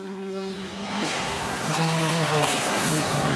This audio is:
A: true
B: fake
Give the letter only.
B